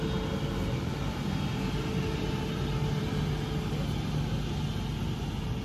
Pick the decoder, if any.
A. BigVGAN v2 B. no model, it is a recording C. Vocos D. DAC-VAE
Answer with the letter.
B